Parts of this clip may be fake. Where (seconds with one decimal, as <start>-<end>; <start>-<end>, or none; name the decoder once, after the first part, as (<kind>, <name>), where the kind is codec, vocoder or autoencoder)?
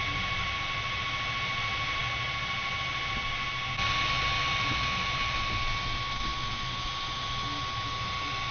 none